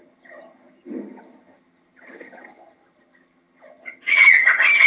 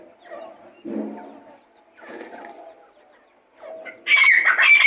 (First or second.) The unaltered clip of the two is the second